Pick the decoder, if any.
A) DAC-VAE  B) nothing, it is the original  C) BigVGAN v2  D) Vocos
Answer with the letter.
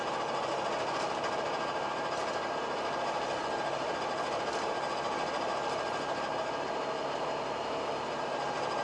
B